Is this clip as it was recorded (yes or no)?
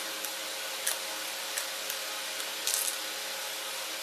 yes